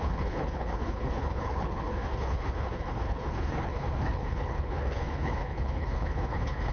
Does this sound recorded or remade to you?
remade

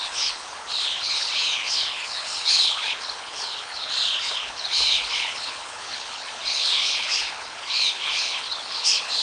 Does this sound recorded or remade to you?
remade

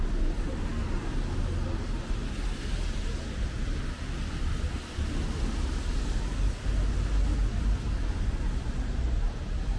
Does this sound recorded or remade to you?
recorded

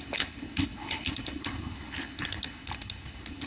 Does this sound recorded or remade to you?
remade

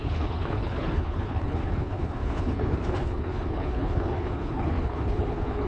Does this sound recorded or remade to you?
remade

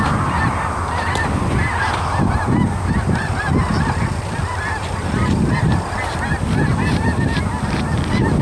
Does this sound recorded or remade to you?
recorded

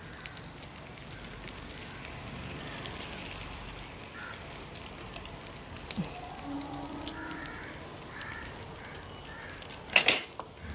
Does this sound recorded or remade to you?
recorded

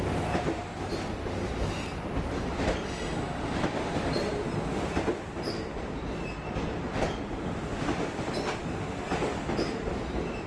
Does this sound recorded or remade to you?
recorded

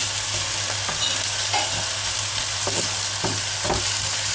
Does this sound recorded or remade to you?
recorded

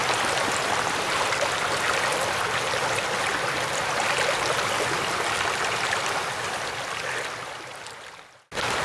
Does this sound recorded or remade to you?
recorded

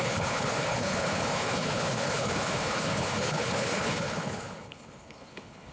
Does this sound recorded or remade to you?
remade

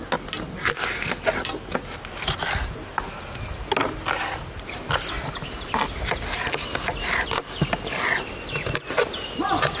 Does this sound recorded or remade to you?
recorded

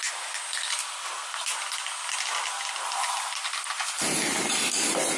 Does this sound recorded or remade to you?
recorded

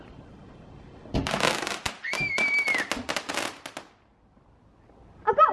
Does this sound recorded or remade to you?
recorded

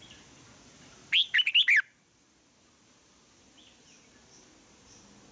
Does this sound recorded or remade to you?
recorded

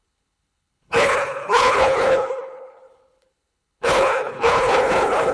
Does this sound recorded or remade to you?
remade